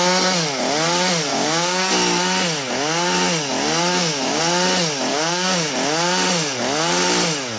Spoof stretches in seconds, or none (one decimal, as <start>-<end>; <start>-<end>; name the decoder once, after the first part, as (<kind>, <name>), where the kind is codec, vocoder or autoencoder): 1.3-1.9 (codec, DAC); 3.9-4.4; 5.1-5.7